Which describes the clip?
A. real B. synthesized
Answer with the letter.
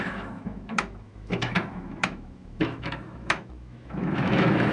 B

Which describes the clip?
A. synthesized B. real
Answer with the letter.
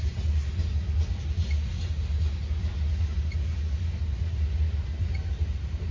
B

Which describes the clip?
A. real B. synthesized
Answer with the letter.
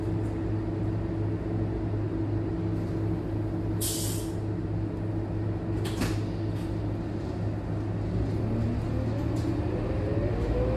A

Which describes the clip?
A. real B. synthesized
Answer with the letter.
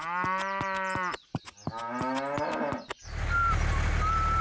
A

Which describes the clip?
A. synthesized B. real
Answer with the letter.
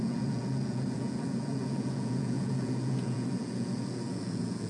A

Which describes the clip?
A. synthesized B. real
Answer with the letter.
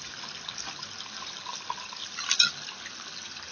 B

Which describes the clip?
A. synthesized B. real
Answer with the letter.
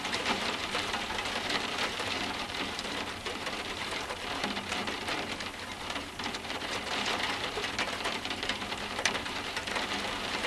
A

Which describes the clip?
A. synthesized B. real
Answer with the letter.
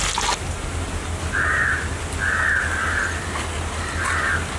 B